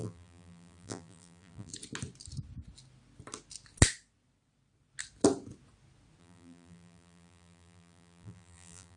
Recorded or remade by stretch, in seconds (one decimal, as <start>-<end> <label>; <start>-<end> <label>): 0.0-1.7 remade; 1.7-6.2 recorded; 6.2-9.0 remade